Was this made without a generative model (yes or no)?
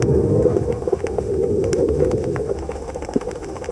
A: no